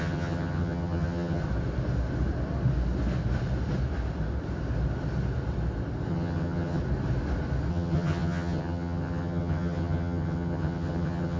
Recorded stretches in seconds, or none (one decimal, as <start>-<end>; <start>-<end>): 1.4-6.1; 6.8-7.7

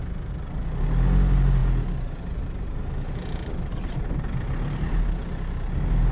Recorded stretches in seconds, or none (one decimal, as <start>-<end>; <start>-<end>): 0.0-6.1

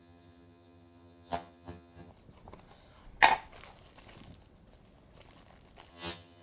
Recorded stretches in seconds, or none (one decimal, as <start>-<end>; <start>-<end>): 2.1-5.9